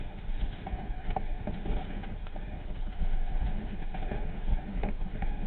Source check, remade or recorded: remade